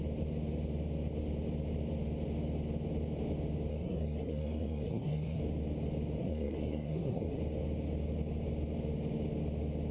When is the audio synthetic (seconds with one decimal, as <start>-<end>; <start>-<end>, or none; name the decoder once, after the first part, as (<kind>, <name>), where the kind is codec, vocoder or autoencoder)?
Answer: 3.7-5.4 (codec, SNAC); 6.2-7.4